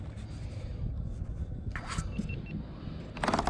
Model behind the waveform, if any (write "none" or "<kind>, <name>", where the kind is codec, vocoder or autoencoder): none